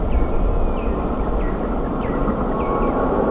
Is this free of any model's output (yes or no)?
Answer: yes